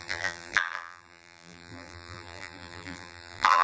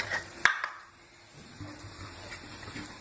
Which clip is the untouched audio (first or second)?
second